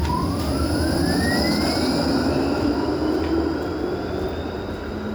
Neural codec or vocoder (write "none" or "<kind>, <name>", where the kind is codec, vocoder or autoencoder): none